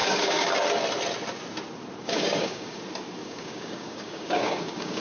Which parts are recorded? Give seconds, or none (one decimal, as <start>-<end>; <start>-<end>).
0.5-2.0; 2.8-3.2